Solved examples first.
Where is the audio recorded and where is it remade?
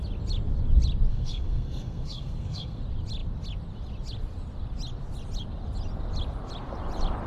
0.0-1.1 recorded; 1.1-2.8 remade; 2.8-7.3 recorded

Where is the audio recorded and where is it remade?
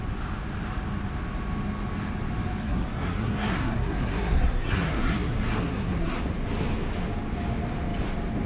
0.0-2.6 recorded; 2.6-6.2 remade; 6.2-8.5 recorded